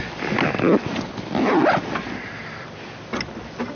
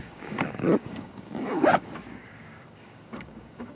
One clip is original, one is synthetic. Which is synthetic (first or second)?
second